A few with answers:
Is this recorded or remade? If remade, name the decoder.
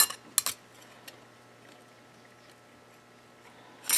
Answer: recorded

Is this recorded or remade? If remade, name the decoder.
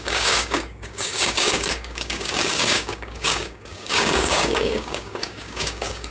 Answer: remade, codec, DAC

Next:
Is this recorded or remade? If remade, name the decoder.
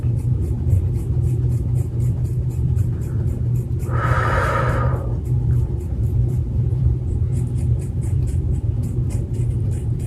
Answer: remade, vocoder, BigVGAN v2